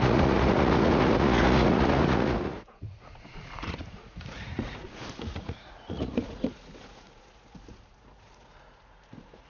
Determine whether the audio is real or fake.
fake